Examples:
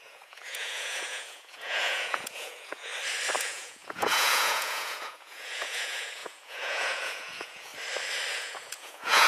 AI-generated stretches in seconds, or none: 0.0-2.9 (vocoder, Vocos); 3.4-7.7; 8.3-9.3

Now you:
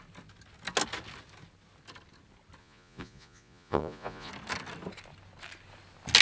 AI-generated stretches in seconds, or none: 2.6-4.3 (vocoder, Vocos)

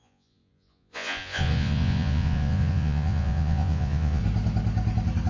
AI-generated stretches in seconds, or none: 0.0-4.2 (vocoder, Vocos)

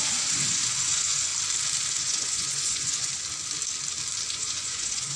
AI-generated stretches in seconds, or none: 0.0-1.3 (vocoder, Vocos); 1.9-3.1; 4.3-5.2